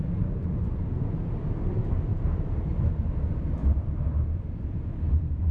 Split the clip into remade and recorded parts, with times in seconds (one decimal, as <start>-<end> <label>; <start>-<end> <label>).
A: 0.0-2.1 recorded; 2.1-2.8 remade; 2.8-3.6 recorded; 3.6-5.5 remade